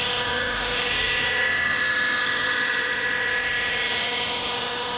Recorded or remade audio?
remade